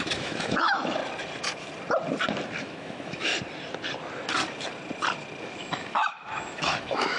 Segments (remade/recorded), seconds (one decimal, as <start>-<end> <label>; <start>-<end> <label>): 0.0-1.0 remade; 1.0-2.6 recorded; 2.6-3.3 remade; 3.3-5.4 recorded; 5.4-7.2 remade